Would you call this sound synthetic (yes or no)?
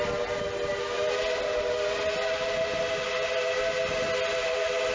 no